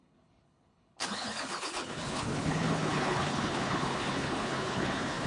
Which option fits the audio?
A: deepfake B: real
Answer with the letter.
A